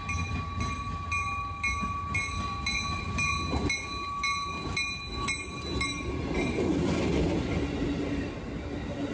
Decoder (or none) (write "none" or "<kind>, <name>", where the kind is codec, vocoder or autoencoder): none